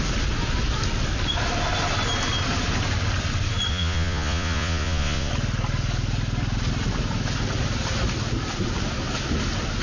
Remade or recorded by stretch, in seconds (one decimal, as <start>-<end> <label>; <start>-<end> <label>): 0.0-3.7 recorded; 3.7-5.3 remade; 5.3-9.8 recorded